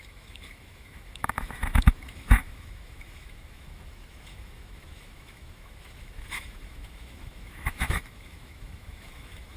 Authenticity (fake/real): fake